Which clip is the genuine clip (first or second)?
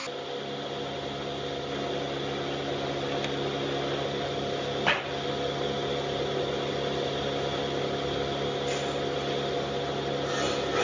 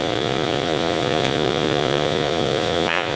first